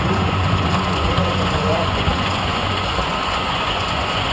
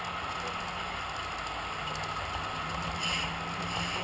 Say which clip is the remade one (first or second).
first